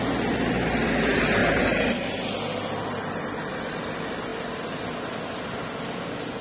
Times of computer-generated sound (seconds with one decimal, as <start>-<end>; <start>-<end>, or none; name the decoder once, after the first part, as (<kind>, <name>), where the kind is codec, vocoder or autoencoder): none